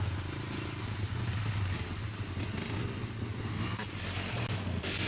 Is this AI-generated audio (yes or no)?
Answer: no